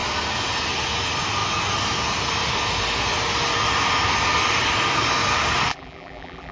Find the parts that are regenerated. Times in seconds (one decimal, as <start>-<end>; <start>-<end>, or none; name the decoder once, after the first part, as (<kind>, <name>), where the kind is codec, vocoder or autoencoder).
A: 5.7-6.5 (vocoder, BigVGAN v2)